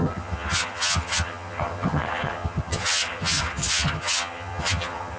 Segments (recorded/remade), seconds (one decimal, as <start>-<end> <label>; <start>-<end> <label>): 0.0-5.2 remade